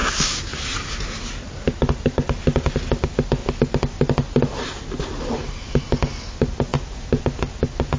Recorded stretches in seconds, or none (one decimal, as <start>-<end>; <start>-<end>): 0.5-8.0